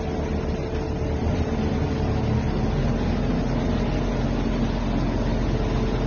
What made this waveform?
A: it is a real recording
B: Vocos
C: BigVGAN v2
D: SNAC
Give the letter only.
A